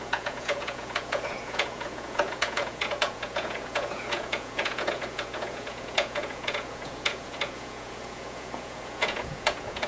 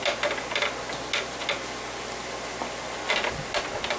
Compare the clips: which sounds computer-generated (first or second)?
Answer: first